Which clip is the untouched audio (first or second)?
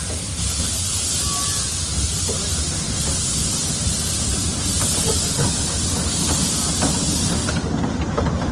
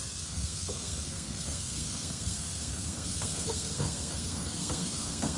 first